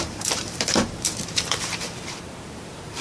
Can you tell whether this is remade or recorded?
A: remade